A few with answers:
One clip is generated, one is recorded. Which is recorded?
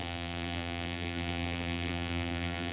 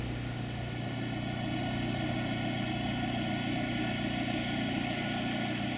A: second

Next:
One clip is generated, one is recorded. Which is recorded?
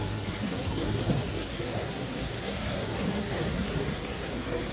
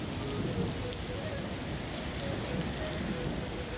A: second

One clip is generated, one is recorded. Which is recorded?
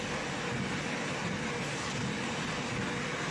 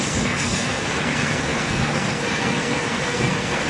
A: first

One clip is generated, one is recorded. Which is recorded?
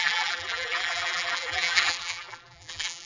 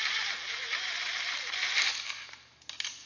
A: second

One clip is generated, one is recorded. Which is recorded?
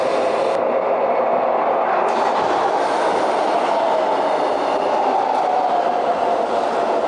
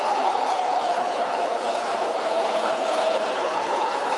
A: first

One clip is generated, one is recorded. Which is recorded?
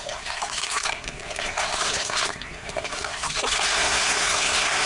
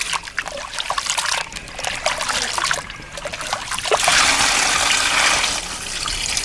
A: second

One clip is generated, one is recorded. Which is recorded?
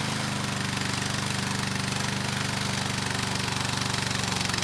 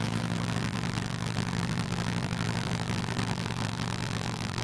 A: first